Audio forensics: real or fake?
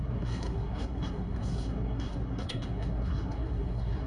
fake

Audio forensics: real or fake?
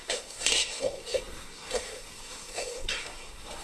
fake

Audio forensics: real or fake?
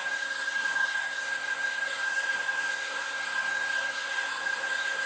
fake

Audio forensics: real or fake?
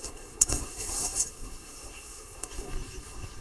fake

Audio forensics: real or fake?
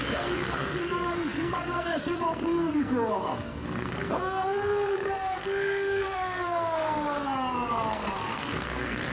fake